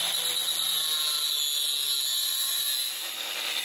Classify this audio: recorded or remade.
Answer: recorded